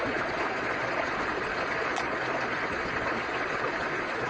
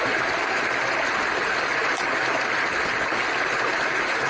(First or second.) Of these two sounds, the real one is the second